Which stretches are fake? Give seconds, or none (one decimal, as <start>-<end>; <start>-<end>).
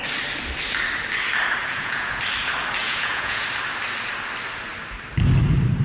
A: 1.6-2.2; 2.8-3.4